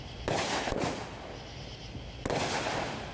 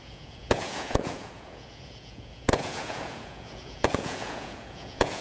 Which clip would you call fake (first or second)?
second